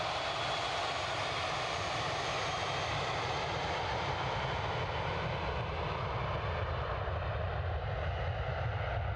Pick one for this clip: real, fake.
real